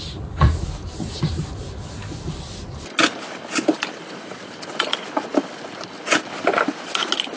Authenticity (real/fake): real